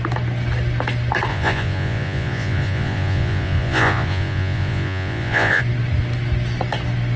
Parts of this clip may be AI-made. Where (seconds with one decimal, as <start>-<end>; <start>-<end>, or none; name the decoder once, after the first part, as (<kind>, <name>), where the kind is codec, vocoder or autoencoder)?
1.3-5.6 (vocoder, Vocos)